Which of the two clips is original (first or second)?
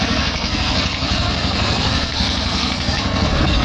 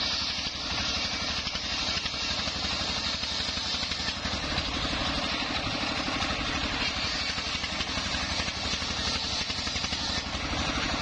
second